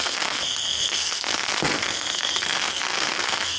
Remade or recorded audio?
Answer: remade